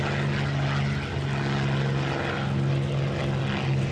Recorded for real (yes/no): yes